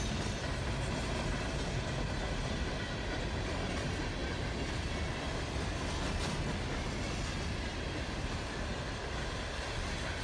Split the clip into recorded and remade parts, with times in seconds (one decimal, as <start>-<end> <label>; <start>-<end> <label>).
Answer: 0.0-10.2 recorded